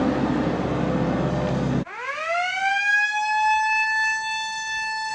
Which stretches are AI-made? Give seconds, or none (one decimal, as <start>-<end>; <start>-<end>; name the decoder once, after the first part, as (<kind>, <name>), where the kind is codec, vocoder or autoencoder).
2.7-5.1 (autoencoder, DAC-VAE)